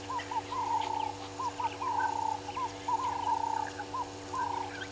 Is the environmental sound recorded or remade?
recorded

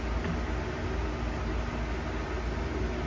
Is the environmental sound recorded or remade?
recorded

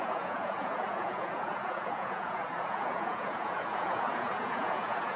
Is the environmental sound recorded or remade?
remade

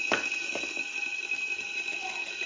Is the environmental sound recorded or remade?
recorded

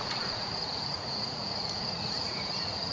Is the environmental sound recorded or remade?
remade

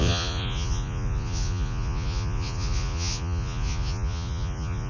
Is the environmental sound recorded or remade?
remade